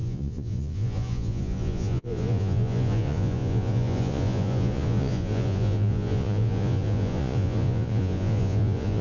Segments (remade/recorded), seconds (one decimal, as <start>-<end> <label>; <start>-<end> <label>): 0.0-9.0 remade